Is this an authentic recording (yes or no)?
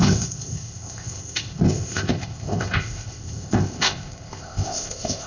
no